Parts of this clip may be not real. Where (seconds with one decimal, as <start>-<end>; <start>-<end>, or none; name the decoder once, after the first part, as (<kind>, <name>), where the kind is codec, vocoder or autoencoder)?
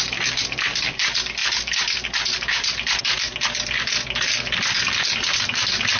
none